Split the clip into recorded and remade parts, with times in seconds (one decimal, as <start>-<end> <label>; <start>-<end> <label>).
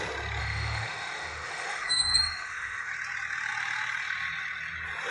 0.0-0.4 recorded; 0.4-2.9 remade; 2.9-5.1 recorded